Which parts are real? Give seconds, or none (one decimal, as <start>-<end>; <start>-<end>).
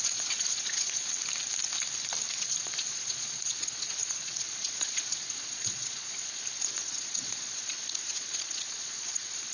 1.1-2.3